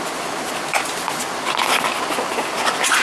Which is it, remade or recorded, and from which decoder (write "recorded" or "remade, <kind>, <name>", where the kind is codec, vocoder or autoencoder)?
recorded